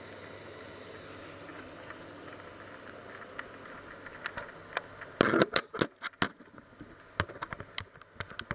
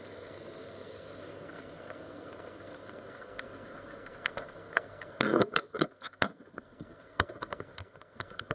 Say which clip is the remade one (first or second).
second